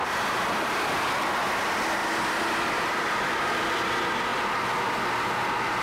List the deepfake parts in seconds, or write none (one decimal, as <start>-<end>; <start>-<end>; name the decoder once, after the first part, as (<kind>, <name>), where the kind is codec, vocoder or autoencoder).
2.0-3.8 (vocoder, BigVGAN v2)